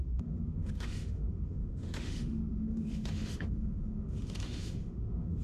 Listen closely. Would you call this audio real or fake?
fake